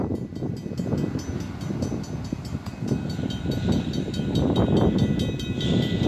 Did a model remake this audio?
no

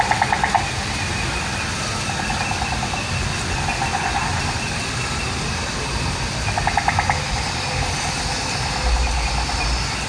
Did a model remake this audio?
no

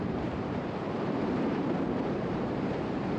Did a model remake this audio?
yes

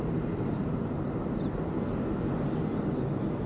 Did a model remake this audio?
no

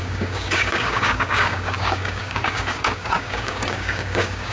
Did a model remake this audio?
yes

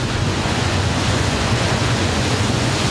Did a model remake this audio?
yes